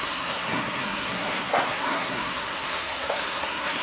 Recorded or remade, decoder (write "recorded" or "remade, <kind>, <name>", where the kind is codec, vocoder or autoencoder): remade, codec, SNAC